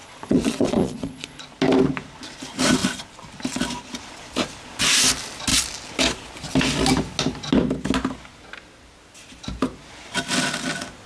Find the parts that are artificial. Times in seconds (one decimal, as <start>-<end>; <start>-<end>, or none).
0.0-1.4